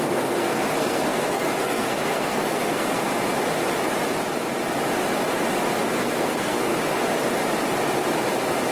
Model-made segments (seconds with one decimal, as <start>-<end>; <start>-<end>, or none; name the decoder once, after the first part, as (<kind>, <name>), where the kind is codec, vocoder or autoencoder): 0.0-3.1 (codec, SNAC); 5.9-6.7